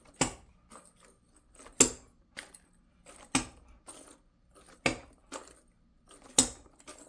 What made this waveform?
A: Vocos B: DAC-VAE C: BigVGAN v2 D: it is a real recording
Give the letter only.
D